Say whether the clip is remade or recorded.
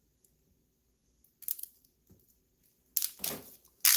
recorded